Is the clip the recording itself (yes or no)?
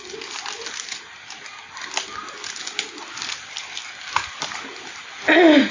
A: yes